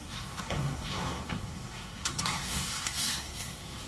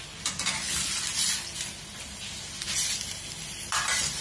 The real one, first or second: second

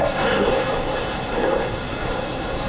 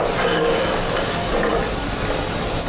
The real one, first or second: second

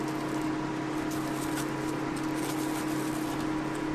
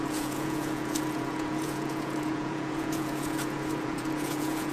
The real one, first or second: first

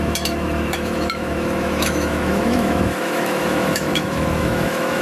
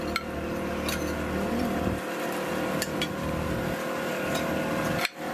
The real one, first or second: second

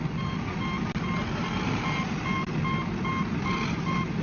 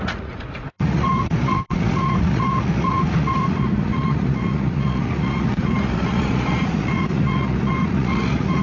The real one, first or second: first